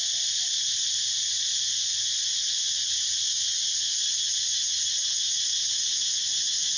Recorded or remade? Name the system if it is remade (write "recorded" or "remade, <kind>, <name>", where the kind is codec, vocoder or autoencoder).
recorded